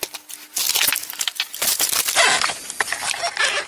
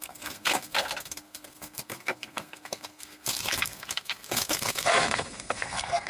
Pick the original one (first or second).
first